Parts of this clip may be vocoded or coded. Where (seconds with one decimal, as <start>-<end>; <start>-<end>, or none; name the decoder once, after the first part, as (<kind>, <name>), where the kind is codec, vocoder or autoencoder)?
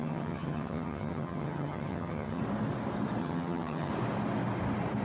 0.0-2.4 (vocoder, HiFi-GAN); 3.2-3.9